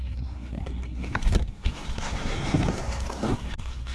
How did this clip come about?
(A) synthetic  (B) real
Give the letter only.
A